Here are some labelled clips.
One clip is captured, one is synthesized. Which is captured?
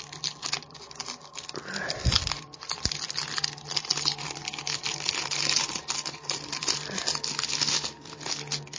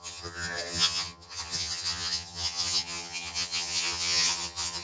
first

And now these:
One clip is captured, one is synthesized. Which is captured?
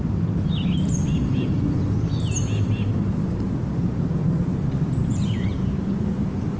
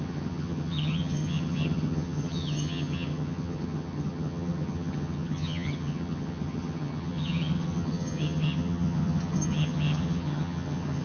first